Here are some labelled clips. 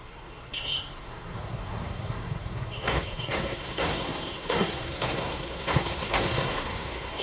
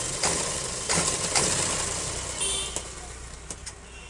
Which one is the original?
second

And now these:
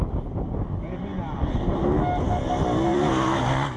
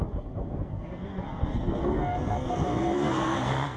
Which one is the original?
first